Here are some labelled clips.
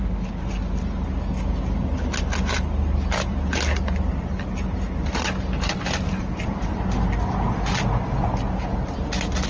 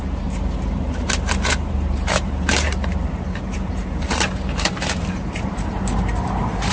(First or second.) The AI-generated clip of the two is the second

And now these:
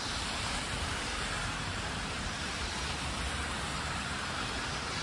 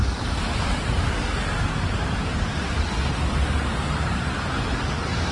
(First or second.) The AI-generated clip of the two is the first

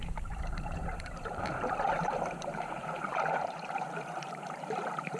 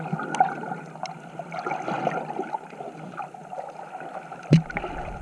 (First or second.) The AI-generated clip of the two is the first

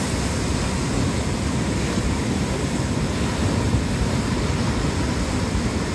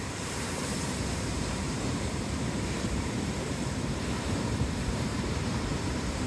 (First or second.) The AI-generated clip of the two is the second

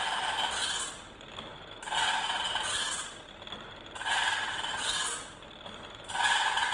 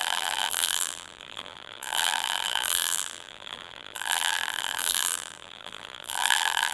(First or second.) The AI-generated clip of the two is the second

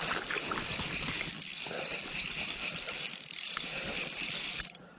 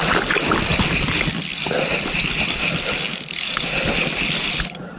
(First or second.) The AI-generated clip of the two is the first